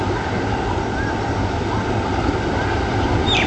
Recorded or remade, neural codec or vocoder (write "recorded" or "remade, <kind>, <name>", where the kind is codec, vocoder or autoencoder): recorded